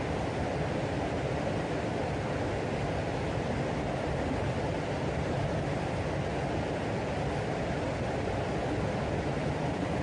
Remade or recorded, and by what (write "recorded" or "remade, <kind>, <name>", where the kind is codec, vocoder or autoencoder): recorded